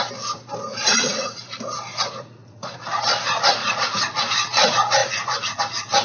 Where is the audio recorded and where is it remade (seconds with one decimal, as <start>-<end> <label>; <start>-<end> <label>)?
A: 0.0-0.7 recorded; 0.7-1.3 remade; 1.3-1.9 recorded; 1.9-2.8 remade; 2.8-3.6 recorded; 3.6-4.2 remade; 4.2-5.0 recorded; 5.0-5.6 remade; 5.6-6.0 recorded